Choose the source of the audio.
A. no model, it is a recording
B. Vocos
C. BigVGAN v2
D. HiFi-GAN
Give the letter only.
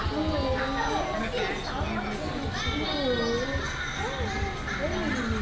A